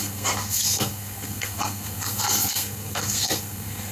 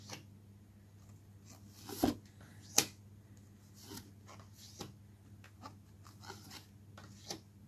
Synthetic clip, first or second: first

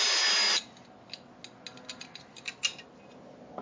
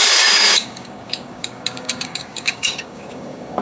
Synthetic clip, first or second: second